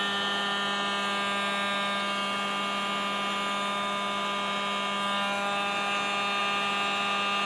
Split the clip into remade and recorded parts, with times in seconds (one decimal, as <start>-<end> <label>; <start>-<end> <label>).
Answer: 0.0-7.5 recorded